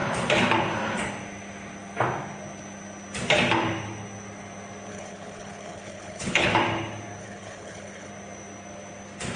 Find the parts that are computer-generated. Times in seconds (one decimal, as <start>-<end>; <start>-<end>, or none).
4.9-6.5; 7.2-8.1